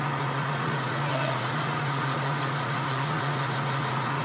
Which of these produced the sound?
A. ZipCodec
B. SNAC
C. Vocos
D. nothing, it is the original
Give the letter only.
C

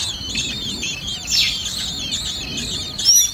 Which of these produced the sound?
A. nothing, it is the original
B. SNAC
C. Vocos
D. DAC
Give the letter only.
A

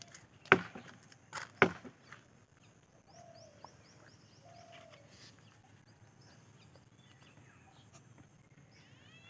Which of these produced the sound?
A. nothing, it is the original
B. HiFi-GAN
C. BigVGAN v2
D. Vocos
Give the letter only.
A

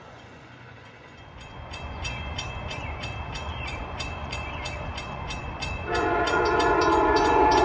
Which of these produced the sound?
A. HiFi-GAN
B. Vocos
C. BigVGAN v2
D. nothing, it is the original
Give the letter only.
B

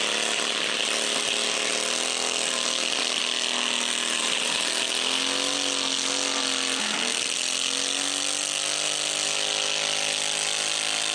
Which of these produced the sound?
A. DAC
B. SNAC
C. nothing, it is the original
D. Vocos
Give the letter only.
C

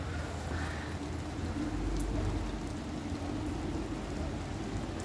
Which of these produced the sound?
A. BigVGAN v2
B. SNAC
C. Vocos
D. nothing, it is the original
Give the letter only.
D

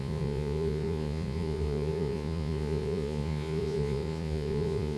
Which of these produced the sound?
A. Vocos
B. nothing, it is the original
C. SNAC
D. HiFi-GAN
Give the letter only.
A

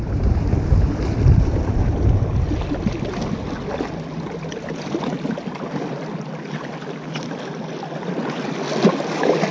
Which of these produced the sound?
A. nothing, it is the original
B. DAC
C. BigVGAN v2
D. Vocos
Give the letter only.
A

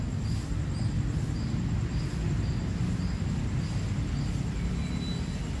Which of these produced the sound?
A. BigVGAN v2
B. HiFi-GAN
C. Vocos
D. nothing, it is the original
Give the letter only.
D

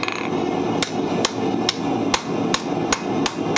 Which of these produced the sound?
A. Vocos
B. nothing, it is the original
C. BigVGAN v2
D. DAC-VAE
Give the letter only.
B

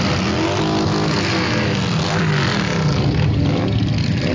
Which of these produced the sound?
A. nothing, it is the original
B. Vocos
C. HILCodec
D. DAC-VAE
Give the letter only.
A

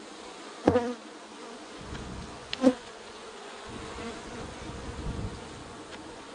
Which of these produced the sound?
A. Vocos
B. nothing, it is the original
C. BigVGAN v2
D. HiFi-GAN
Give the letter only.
A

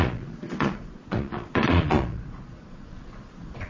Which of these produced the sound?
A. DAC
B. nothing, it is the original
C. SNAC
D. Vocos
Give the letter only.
D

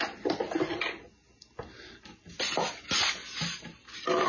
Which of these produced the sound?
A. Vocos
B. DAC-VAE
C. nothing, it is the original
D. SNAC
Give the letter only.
C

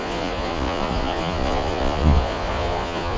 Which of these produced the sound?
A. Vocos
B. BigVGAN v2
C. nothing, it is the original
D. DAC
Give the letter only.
A